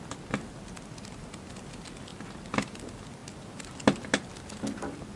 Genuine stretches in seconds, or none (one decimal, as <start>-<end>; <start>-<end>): 0.0-5.2